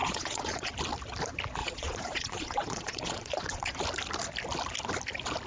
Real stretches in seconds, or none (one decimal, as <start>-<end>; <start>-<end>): 0.7-1.6; 3.8-5.5